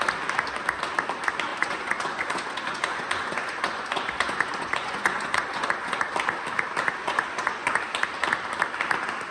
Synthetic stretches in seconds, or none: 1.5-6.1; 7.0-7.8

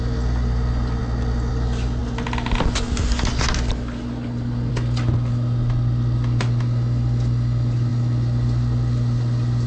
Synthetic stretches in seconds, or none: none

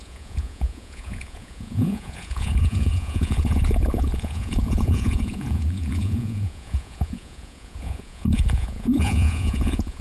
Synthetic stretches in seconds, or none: 0.0-10.0

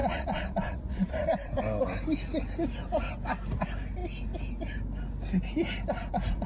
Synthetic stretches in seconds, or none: 0.0-1.6